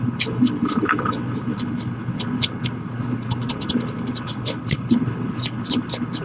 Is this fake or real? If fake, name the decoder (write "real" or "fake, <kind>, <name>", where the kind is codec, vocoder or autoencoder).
fake, codec, HILCodec